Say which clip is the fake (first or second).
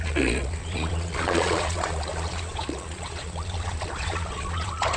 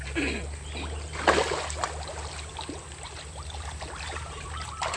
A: first